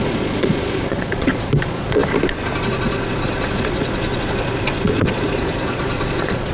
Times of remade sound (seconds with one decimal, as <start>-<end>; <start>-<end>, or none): 0.0-2.0; 2.6-6.5